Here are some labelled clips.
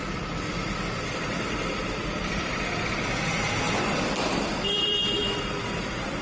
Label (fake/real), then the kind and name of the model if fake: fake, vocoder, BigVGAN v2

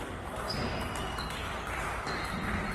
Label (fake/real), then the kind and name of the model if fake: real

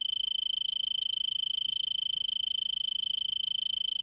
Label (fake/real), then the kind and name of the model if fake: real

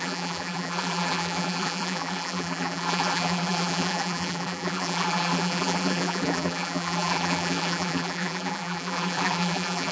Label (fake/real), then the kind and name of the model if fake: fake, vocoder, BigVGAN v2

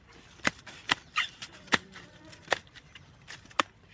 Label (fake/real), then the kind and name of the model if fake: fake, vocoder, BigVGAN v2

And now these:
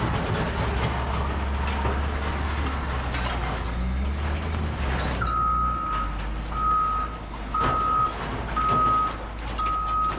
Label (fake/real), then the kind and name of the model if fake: real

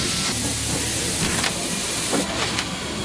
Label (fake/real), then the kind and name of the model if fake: real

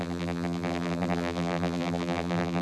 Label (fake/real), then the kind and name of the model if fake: fake, vocoder, BigVGAN v2